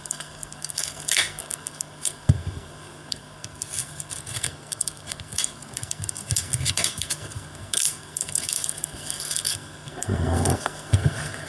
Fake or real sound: fake